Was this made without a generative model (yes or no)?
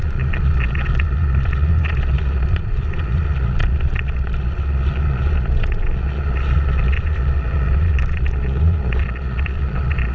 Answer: no